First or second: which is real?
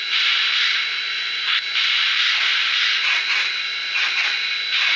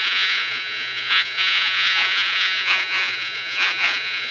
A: first